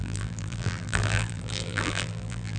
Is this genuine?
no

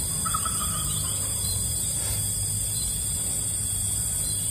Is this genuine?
no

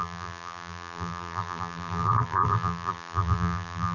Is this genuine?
no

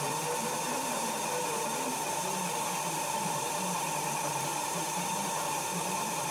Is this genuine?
no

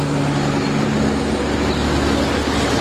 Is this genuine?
yes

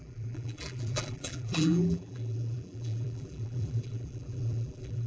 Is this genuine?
no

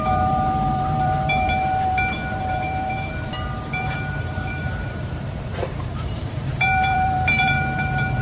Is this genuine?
no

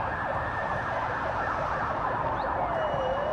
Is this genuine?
yes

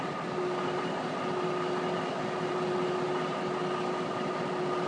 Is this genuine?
yes